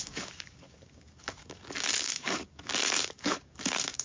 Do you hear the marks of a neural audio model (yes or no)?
yes